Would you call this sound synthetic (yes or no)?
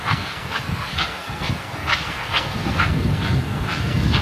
yes